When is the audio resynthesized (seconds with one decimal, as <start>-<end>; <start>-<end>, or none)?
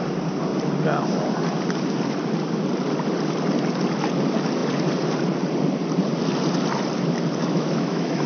7.4-8.3